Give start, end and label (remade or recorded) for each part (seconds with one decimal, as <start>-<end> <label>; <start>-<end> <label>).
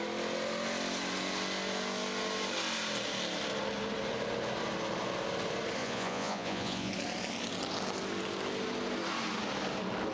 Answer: 0.0-5.8 recorded; 5.8-6.9 remade; 6.9-10.1 recorded